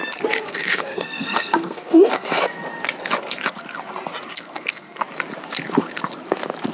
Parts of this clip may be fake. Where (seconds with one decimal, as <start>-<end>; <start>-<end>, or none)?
0.4-2.4; 4.3-5.0

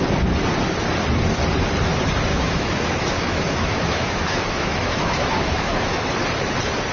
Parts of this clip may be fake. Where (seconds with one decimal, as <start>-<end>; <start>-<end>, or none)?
2.3-6.1

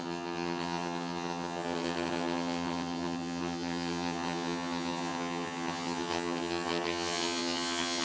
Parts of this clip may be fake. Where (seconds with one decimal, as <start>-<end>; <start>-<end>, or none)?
0.0-8.0

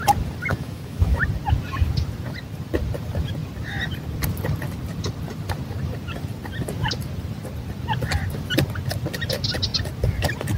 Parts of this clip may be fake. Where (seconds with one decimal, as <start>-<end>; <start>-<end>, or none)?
0.5-1.2

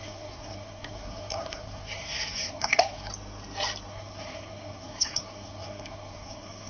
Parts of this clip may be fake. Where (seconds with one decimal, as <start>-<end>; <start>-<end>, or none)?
0.0-3.1; 3.9-6.7

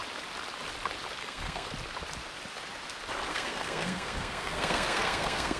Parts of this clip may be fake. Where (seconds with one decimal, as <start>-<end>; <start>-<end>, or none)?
1.2-1.7; 3.3-5.6

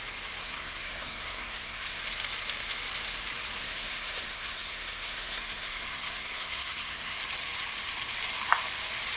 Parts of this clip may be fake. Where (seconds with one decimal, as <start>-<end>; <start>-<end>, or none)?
0.4-2.0; 3.6-7.2